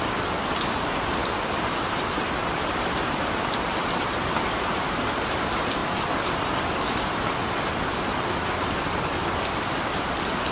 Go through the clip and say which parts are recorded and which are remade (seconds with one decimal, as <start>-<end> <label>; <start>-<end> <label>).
0.0-5.8 remade; 5.8-9.3 recorded; 9.3-10.5 remade